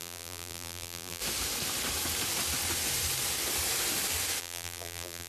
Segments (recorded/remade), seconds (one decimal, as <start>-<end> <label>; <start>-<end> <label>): 0.0-1.2 remade; 1.2-4.4 recorded; 4.4-5.3 remade